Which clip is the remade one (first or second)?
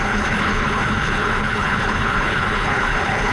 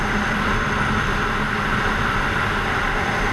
first